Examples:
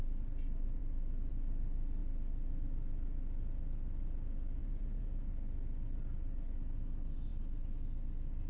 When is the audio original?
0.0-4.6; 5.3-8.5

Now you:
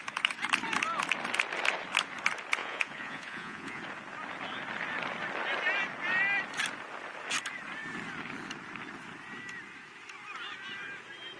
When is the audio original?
0.0-2.6; 3.8-11.4

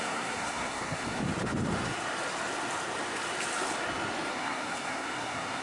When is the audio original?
1.2-4.3

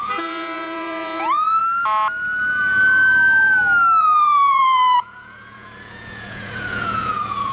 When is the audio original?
1.6-4.0